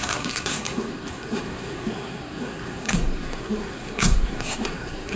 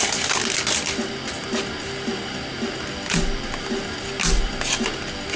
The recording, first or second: second